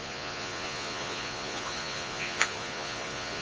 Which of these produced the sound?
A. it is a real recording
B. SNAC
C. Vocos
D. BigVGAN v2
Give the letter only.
C